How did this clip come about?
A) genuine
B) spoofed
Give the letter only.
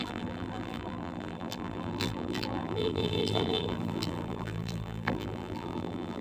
B